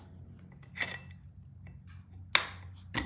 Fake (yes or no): no